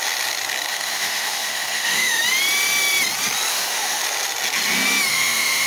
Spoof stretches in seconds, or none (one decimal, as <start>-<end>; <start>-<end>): 0.7-2.2; 3.5-4.0; 5.1-5.7